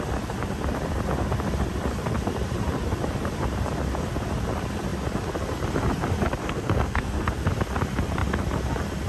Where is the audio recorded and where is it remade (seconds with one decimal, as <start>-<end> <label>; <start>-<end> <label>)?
0.0-6.4 recorded; 6.4-7.5 remade; 7.5-9.1 recorded